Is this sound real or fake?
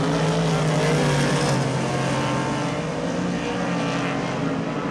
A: real